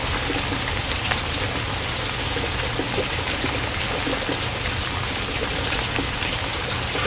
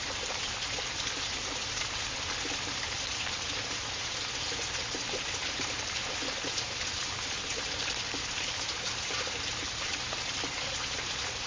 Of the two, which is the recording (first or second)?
first